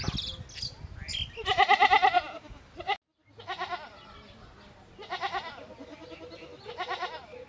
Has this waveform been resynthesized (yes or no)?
no